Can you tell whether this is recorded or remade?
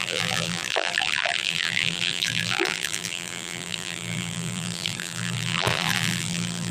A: remade